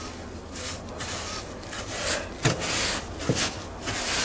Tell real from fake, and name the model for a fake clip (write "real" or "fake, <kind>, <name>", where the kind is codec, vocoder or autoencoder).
real